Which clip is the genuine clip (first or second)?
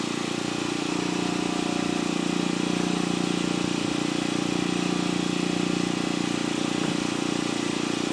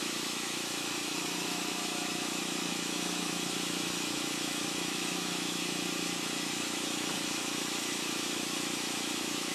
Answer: first